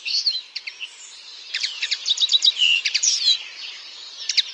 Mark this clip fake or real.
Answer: fake